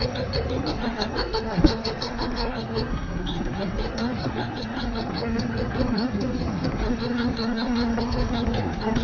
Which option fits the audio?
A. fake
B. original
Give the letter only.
A